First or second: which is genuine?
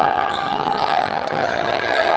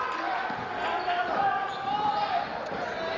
second